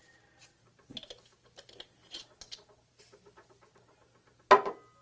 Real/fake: real